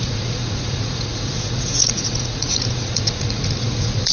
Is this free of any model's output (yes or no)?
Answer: no